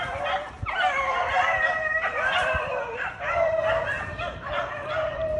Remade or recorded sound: remade